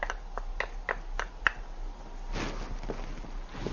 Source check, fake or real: real